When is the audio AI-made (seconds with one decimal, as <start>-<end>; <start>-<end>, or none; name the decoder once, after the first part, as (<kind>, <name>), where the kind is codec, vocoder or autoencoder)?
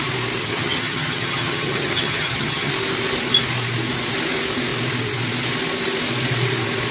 0.4-2.7 (vocoder, HiFi-GAN)